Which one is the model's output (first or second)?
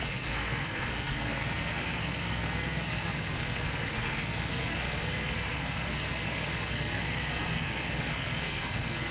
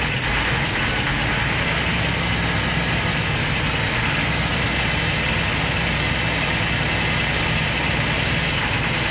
first